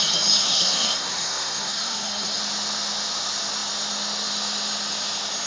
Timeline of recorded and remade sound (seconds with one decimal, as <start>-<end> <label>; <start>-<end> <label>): 0.0-0.4 recorded; 0.4-2.4 remade; 2.4-5.5 recorded